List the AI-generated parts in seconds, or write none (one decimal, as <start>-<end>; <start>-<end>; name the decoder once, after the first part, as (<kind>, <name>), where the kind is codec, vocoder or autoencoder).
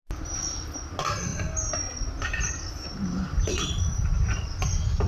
none